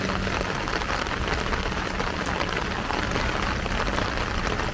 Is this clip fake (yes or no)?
no